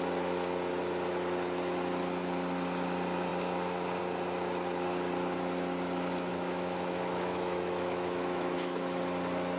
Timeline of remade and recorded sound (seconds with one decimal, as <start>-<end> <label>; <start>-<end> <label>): 0.0-6.3 recorded; 6.3-9.0 remade; 9.0-9.6 recorded